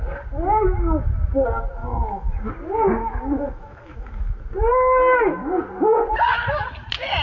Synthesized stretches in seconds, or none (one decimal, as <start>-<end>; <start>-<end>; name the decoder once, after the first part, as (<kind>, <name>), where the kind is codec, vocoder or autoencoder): 1.8-2.5 (autoencoder, DAC-VAE); 3.0-4.3